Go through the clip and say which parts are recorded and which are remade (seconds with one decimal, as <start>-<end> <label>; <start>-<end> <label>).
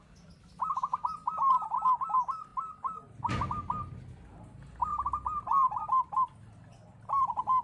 0.0-7.6 recorded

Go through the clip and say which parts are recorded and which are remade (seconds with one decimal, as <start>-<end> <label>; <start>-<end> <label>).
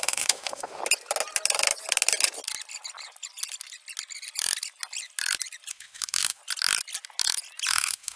0.0-0.8 remade; 0.8-5.7 recorded; 5.7-6.4 remade; 6.4-7.7 recorded; 7.7-8.2 remade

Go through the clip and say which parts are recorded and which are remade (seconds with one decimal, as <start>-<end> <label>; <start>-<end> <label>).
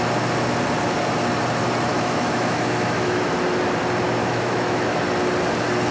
0.0-1.9 recorded; 1.9-3.2 remade; 3.2-4.2 recorded; 4.2-5.0 remade; 5.0-5.9 recorded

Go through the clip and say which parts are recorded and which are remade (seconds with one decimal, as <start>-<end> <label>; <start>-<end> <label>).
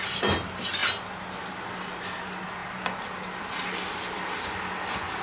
0.0-5.2 recorded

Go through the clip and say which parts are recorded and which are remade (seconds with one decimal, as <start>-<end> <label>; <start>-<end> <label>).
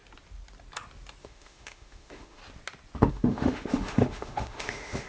0.0-1.2 recorded; 1.2-2.4 remade; 2.4-3.1 recorded; 3.1-5.1 remade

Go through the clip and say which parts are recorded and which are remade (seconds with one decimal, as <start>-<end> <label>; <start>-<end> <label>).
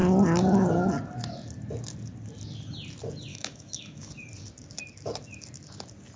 0.0-3.3 recorded; 3.3-4.1 remade; 4.1-6.2 recorded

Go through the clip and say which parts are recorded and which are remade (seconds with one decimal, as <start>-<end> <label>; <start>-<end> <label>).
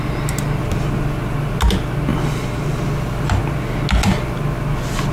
0.0-5.1 recorded